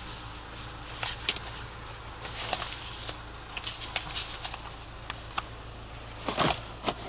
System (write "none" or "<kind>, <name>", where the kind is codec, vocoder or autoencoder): none